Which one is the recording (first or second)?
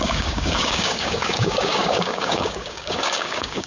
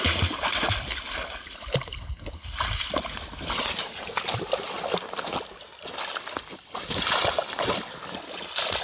second